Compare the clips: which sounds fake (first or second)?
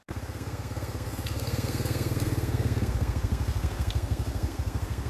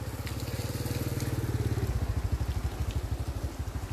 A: first